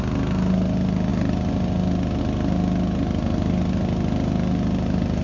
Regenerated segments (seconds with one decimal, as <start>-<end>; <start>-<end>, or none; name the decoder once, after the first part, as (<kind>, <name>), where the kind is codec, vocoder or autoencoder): none